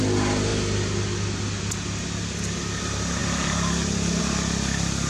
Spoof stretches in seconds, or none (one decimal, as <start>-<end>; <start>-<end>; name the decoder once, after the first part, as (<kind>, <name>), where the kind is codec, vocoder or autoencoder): 3.2-4.2 (vocoder, BigVGAN v2)